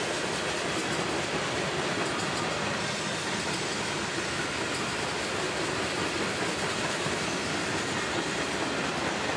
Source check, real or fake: real